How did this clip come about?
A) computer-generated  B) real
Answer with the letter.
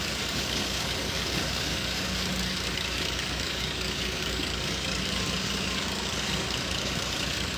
A